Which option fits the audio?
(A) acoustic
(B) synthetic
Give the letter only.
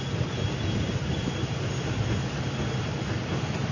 A